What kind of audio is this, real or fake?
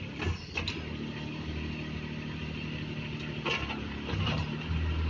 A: real